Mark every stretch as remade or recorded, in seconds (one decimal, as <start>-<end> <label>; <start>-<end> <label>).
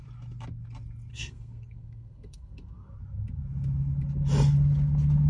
0.0-1.1 recorded; 1.1-2.9 remade; 2.9-5.3 recorded